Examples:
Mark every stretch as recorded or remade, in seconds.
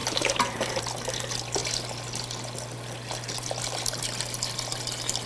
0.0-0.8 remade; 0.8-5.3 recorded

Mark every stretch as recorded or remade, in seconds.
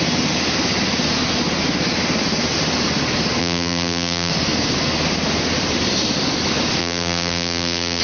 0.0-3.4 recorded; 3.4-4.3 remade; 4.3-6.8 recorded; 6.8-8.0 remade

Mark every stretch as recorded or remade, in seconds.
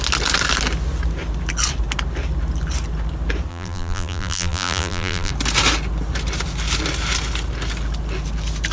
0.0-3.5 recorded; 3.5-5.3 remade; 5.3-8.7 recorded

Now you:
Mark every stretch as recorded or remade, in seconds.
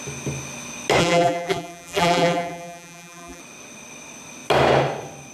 0.0-1.0 recorded; 1.0-3.4 remade; 3.4-5.3 recorded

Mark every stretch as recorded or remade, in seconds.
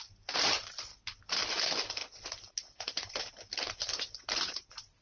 0.0-0.9 remade; 0.9-1.5 recorded; 1.5-2.0 remade; 2.0-2.5 recorded; 2.5-5.0 remade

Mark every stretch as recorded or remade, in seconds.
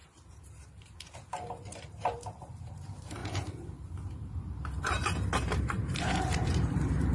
0.0-7.1 remade